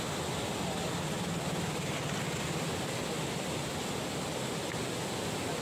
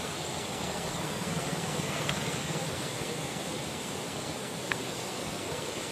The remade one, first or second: second